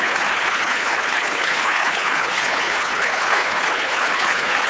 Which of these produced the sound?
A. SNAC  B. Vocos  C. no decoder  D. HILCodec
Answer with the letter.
D